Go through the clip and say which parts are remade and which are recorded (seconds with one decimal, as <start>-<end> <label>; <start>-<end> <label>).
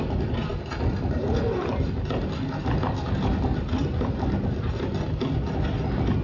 0.0-6.2 recorded